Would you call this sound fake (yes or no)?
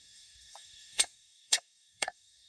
yes